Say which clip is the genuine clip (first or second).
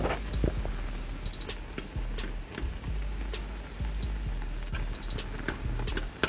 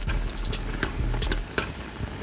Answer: first